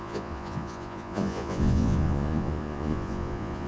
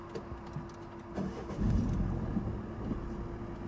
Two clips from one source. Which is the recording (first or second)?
second